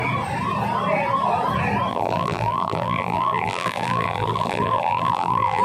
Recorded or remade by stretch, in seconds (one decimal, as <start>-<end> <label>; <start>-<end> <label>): 0.0-1.9 recorded; 1.9-5.6 remade

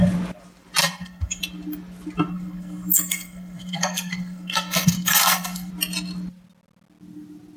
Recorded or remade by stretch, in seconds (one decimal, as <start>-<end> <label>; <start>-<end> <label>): 0.0-0.8 recorded; 0.8-1.4 remade; 1.4-2.3 recorded; 2.3-5.7 remade; 5.7-7.6 recorded

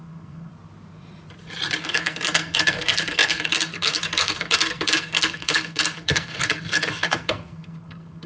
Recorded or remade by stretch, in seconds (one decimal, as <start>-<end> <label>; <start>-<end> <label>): 0.0-0.5 remade; 0.5-1.8 recorded; 1.8-8.3 remade

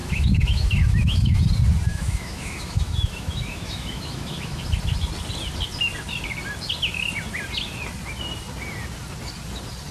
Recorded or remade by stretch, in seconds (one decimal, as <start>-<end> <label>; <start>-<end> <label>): 0.0-1.4 remade; 1.4-1.9 recorded; 1.9-4.6 remade; 4.6-9.9 recorded

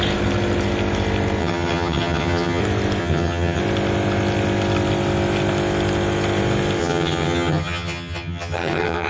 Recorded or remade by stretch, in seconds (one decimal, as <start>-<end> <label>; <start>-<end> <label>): 0.0-1.4 recorded; 1.4-2.6 remade; 2.6-3.0 recorded; 3.0-3.6 remade; 3.6-6.8 recorded; 6.8-9.1 remade

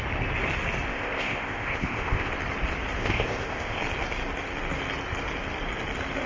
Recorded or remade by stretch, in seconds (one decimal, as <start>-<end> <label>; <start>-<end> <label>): 0.0-0.9 recorded; 0.9-2.3 remade; 2.3-3.0 recorded; 3.0-3.8 remade; 3.8-6.3 recorded

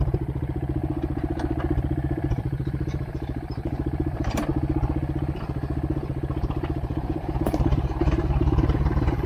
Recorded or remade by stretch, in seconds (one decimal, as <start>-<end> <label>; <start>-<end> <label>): 0.0-4.5 remade; 4.5-6.5 recorded; 6.5-9.3 remade

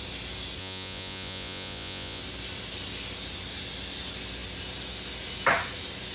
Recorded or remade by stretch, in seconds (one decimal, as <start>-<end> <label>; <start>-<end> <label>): 0.0-0.6 recorded; 0.6-2.2 remade; 2.2-6.1 recorded